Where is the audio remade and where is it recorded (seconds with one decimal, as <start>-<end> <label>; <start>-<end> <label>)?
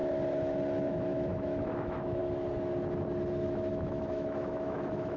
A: 0.0-0.9 recorded; 0.9-2.2 remade; 2.2-3.5 recorded; 3.5-5.2 remade